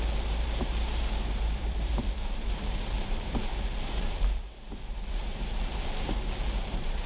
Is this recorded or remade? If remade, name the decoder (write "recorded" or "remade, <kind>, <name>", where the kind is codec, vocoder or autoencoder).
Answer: remade, vocoder, BigVGAN v2